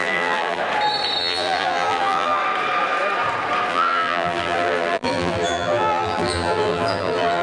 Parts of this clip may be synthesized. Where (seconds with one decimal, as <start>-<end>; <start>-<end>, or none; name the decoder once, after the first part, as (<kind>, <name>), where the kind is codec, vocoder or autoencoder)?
0.0-0.6 (vocoder, BigVGAN v2); 1.2-2.4; 3.7-7.4